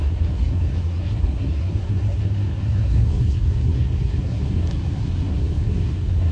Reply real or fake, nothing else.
fake